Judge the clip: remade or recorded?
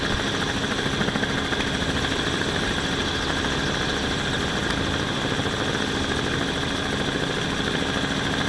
recorded